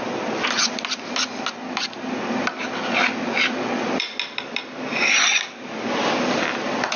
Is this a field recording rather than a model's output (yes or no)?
yes